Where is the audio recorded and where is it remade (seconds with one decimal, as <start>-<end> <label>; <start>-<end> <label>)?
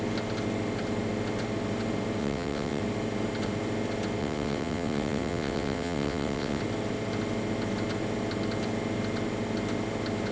0.0-2.2 recorded; 2.2-2.8 remade; 2.8-4.2 recorded; 4.2-6.6 remade; 6.6-10.3 recorded